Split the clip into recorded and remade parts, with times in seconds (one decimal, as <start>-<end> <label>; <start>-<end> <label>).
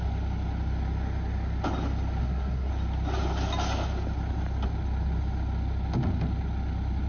0.0-2.2 recorded; 2.2-2.7 remade; 2.7-7.1 recorded